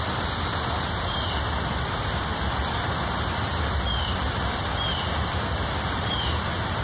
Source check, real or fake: fake